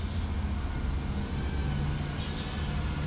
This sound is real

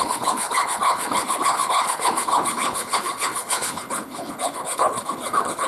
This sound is fake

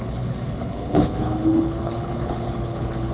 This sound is fake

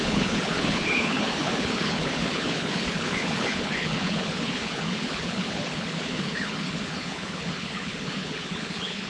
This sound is fake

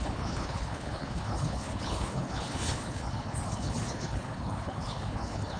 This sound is fake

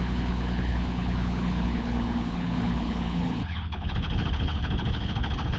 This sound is fake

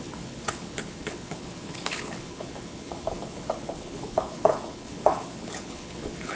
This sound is fake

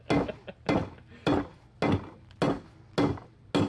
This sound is real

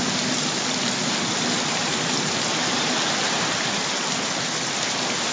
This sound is real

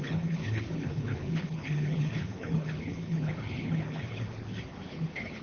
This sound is fake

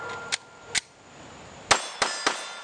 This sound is real